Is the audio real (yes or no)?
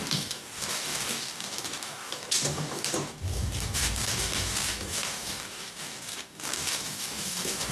no